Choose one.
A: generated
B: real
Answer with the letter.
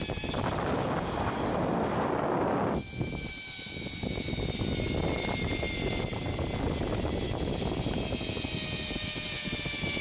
B